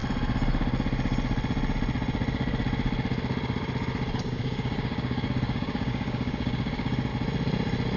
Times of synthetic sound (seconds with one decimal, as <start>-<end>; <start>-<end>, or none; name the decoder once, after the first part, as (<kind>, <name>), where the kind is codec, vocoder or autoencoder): 4.2-7.1 (codec, DAC)